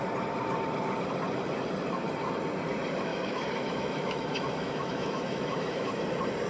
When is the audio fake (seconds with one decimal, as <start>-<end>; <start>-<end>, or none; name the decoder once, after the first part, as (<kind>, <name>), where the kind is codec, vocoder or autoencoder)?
3.1-6.0 (autoencoder, DAC-VAE)